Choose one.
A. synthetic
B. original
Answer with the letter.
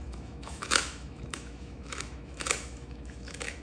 A